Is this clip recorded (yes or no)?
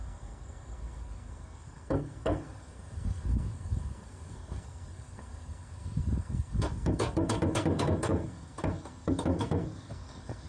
no